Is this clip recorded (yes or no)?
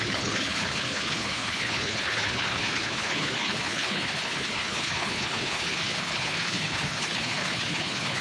no